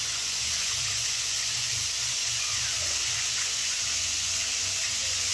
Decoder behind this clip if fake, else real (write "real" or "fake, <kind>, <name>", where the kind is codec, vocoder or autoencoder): fake, vocoder, Vocos